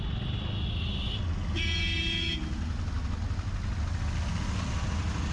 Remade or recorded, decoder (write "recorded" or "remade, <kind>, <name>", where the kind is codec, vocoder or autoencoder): recorded